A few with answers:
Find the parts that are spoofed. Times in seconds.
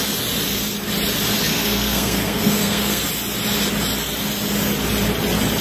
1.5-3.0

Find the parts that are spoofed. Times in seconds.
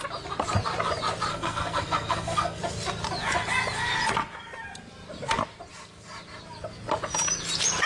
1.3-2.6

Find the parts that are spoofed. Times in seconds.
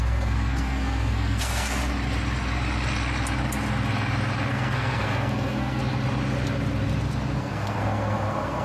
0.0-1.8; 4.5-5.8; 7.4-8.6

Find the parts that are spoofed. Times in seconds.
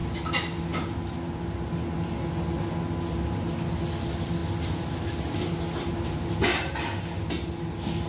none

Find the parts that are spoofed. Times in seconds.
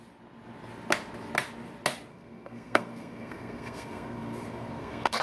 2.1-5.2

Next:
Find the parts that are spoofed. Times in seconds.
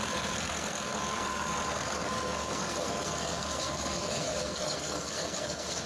0.0-5.9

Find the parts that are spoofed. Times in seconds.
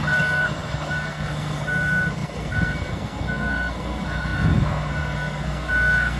0.0-6.2